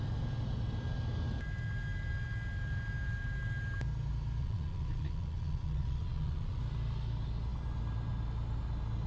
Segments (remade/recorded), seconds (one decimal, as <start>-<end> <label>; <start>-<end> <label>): 0.0-4.4 recorded; 4.4-6.6 remade; 6.6-9.1 recorded